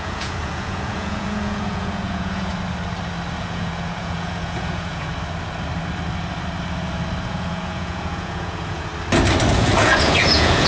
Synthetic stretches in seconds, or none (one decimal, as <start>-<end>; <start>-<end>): 0.0-2.5; 3.4-5.1; 7.3-8.9; 9.5-10.7